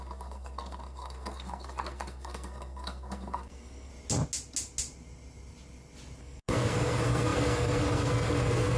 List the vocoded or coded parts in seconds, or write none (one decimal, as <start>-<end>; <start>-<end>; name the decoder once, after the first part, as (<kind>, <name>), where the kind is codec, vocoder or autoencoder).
0.0-3.9 (codec, SNAC); 6.2-8.8